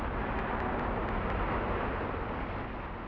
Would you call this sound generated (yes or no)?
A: no